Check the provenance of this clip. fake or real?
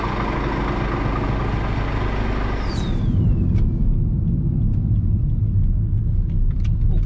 real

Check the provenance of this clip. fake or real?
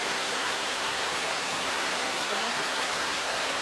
fake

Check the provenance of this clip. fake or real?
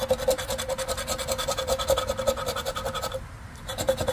real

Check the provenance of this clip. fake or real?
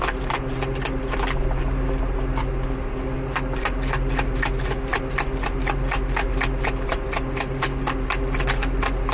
real